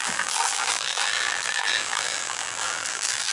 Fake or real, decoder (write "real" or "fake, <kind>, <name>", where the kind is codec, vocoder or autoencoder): fake, vocoder, BigVGAN v2